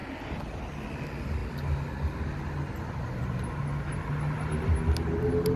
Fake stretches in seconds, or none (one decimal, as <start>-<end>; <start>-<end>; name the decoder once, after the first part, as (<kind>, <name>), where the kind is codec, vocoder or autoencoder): none

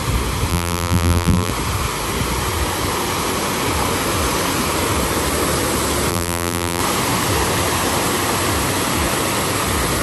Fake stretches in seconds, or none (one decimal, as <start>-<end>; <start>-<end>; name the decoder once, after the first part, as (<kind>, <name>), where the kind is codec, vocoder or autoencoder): 0.5-1.5 (vocoder, BigVGAN v2); 6.1-6.8

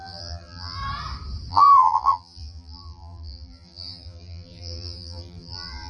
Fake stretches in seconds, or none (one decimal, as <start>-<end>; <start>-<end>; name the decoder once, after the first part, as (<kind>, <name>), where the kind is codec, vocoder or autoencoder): 0.0-0.8 (vocoder, BigVGAN v2); 1.5-5.9

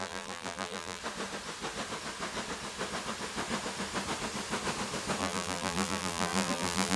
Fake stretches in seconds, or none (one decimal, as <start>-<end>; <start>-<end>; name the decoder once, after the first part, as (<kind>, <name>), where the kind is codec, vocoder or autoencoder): 0.0-1.0 (vocoder, BigVGAN v2); 5.2-7.0

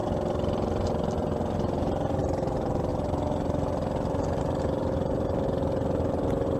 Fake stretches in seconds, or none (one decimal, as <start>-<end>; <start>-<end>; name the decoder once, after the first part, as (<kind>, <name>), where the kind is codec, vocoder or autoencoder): 0.0-2.9 (vocoder, BigVGAN v2); 4.4-6.6